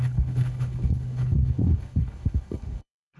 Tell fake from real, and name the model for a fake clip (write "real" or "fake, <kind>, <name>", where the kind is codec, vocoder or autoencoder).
fake, codec, HILCodec